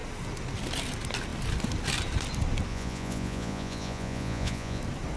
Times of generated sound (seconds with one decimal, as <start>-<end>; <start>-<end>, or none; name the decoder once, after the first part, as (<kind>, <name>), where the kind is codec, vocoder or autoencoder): 2.7-4.8 (vocoder, Vocos)